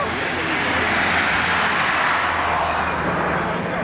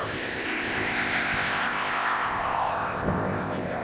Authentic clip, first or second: first